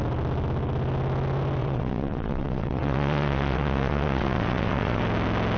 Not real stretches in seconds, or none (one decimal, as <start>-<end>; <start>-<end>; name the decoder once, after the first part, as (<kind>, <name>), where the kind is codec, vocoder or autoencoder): 1.6-5.0 (vocoder, WaveNeXt)